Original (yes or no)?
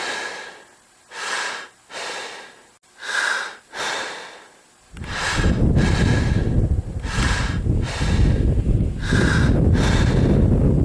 yes